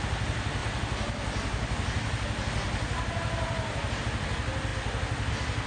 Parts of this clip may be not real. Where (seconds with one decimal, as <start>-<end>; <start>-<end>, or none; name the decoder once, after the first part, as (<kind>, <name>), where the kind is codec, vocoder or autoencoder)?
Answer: none